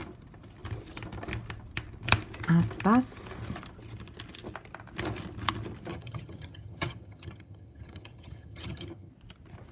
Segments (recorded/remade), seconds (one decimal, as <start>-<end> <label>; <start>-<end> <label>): 0.0-5.9 recorded; 5.9-9.1 remade; 9.1-9.7 recorded